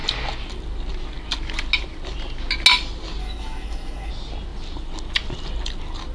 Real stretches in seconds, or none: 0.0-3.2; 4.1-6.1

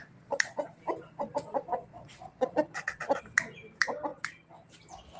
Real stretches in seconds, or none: 0.6-1.9; 3.2-5.2

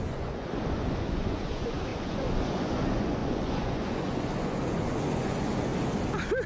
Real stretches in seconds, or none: 5.7-6.5